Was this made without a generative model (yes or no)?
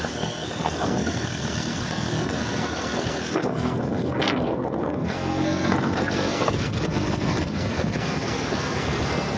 no